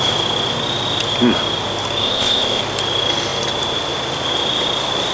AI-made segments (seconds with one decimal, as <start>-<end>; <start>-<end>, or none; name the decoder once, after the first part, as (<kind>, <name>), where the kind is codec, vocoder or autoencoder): 2.0-2.6 (codec, ZipCodec)